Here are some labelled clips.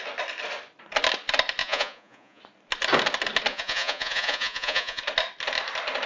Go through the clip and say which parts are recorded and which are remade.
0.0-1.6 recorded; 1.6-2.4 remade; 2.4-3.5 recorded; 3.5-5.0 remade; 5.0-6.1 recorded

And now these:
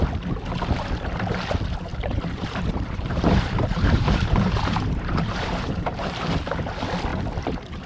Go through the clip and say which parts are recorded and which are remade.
0.0-1.9 recorded; 1.9-6.3 remade; 6.3-7.9 recorded